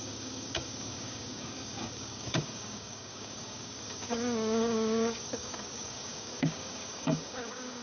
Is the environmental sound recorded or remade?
remade